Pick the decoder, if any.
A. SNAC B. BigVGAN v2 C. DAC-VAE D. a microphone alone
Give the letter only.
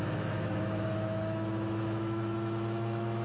C